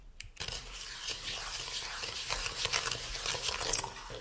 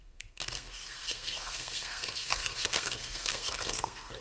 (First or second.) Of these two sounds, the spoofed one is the second